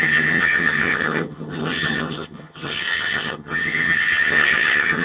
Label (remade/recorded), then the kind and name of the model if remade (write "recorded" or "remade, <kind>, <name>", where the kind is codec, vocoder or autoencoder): remade, vocoder, HiFi-GAN